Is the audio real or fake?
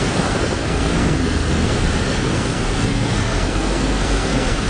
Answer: fake